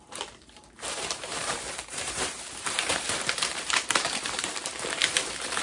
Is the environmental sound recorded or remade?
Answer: remade